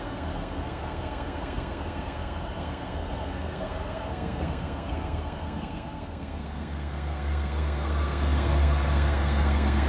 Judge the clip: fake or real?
fake